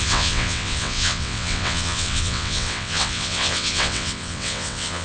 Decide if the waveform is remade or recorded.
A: remade